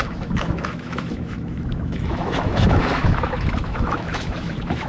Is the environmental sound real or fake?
fake